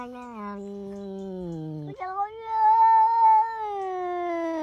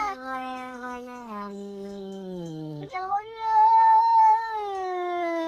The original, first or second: first